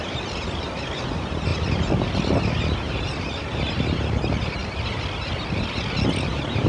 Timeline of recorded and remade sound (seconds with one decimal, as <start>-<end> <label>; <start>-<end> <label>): 0.0-6.7 recorded